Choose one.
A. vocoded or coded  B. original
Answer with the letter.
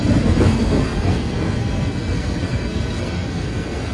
A